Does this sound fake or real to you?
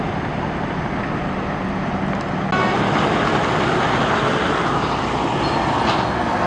real